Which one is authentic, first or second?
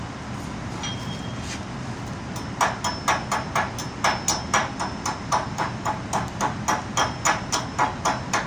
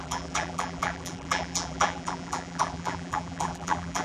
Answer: first